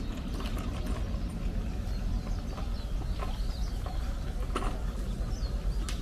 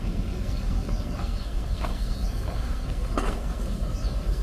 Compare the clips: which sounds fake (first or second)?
second